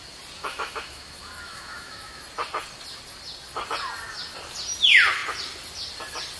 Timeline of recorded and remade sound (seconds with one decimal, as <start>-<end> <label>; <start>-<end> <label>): 0.0-0.4 recorded; 0.4-2.2 remade; 2.2-6.4 recorded